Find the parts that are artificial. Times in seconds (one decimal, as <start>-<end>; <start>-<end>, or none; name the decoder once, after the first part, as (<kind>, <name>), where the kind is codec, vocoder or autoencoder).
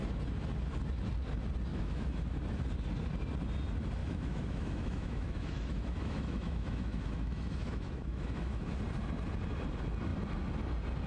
1.7-2.4 (autoencoder, DAC-VAE); 4.0-8.8